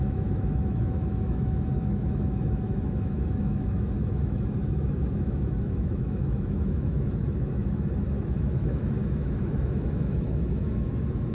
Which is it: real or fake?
fake